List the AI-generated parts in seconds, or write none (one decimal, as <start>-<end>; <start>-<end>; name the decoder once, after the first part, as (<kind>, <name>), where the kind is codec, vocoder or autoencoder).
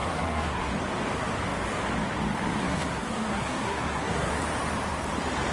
0.0-0.7 (codec, SNAC); 2.6-4.3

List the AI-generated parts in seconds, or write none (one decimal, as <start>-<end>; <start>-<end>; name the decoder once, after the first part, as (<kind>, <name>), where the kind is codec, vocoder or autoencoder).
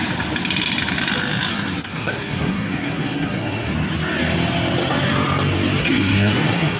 1.5-3.7 (codec, SNAC); 5.8-6.8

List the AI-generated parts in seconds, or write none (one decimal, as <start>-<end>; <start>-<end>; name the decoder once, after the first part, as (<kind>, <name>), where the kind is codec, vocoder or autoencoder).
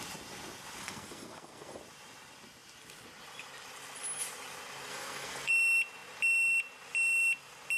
0.8-1.8 (codec, SNAC); 4.9-5.5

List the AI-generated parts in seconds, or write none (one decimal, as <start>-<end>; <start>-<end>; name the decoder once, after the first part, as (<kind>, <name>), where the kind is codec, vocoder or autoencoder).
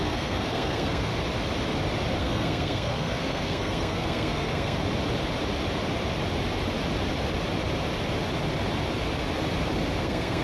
0.0-1.1 (codec, SNAC); 2.2-4.8; 10.0-10.4